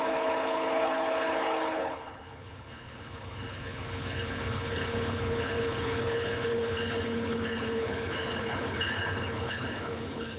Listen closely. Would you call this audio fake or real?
fake